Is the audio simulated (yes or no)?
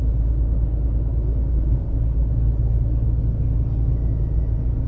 no